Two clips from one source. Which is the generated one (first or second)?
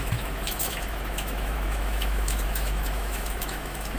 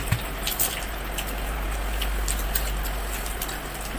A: first